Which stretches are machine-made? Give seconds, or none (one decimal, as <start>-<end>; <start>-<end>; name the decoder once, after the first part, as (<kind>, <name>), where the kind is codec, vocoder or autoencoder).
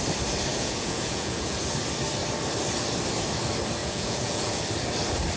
0.5-1.6 (vocoder, Vocos); 3.8-4.6